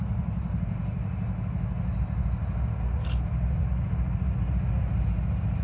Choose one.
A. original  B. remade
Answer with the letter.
A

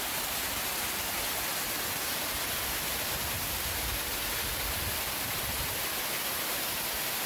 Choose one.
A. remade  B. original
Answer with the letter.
B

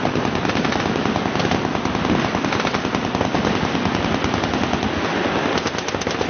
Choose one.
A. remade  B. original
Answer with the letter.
B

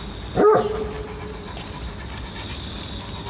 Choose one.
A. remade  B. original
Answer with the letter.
B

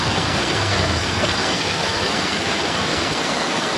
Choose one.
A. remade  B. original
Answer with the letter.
A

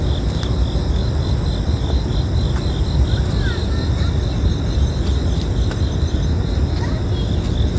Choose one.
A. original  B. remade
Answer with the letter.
A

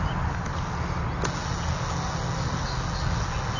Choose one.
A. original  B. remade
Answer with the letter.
A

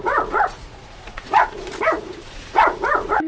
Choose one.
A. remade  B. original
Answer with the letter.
A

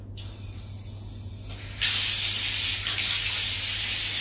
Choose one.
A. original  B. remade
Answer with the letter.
A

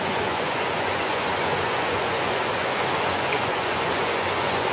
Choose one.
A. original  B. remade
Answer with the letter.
B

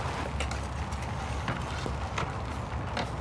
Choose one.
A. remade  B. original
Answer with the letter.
B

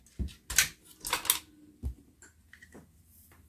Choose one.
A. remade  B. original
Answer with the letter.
B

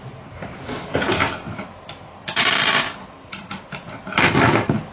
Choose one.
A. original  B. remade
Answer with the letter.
A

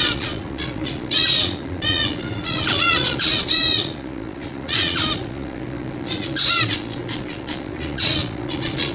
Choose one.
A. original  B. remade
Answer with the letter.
B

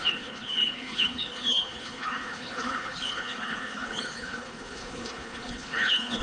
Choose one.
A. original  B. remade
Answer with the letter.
B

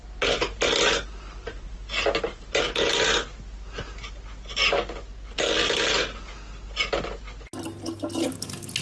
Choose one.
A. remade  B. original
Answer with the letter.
B